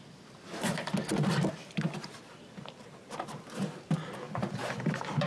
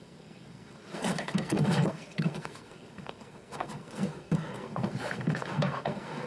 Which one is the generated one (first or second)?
second